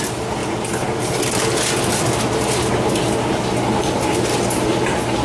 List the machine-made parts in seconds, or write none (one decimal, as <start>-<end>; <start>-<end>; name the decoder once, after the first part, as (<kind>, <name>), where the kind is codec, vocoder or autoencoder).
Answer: none